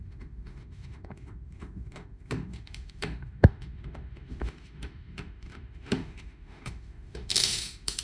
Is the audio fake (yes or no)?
yes